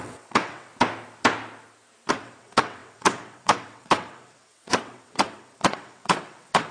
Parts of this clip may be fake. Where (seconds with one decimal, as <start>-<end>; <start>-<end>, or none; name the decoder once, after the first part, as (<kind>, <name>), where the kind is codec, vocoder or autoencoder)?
0.0-0.7 (vocoder, WaveNeXt); 2.1-6.7